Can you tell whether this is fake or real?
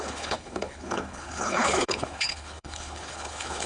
fake